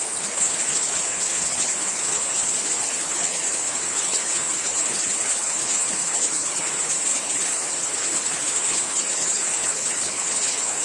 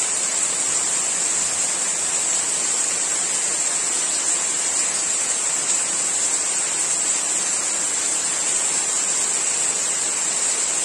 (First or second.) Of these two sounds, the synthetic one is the first